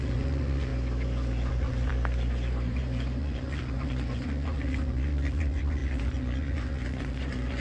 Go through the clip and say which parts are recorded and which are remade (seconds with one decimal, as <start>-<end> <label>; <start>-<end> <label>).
0.0-0.7 remade; 0.7-1.5 recorded; 1.5-1.9 remade; 1.9-3.2 recorded; 3.2-7.6 remade